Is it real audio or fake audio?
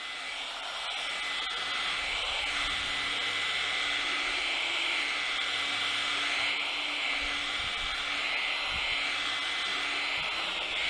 real